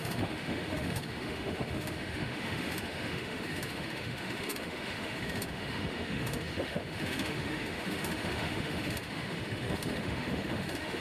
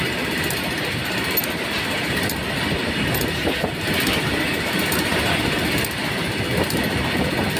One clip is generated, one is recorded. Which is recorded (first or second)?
second